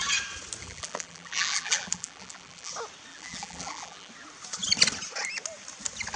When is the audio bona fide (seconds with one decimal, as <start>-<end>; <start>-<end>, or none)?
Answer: 0.0-0.6; 2.7-3.1; 4.1-6.2